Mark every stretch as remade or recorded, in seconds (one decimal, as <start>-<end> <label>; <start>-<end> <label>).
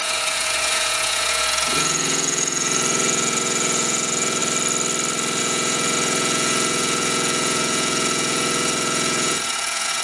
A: 0.0-4.4 remade; 4.4-5.4 recorded; 5.4-10.0 remade